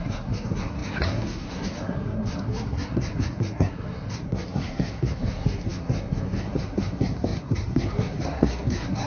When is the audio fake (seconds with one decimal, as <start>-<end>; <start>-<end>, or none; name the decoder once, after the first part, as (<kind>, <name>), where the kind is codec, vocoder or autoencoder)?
0.0-9.1 (codec, SNAC)